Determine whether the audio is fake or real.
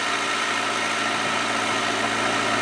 real